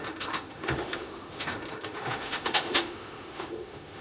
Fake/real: fake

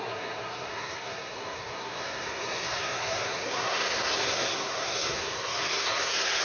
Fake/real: fake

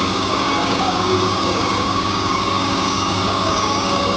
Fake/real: fake